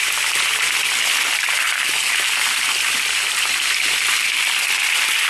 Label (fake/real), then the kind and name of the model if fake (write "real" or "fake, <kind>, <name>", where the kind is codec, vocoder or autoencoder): real